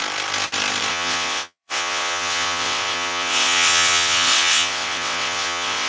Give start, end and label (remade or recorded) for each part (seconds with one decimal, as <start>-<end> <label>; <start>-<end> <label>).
0.0-0.9 recorded; 0.9-5.9 remade